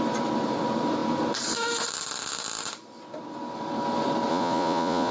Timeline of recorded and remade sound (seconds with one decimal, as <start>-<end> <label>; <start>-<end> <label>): 0.0-4.3 recorded; 4.3-5.1 remade